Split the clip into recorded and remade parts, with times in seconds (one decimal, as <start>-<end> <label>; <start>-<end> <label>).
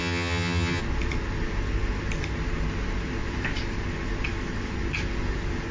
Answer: 0.0-0.8 remade; 0.8-5.7 recorded